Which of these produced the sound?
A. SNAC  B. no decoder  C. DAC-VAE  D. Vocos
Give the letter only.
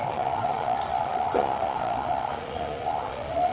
D